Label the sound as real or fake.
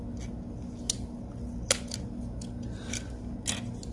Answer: real